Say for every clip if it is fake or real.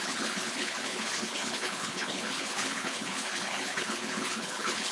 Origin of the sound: fake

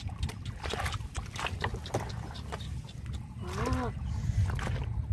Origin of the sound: real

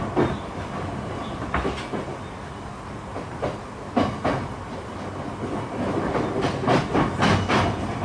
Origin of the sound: real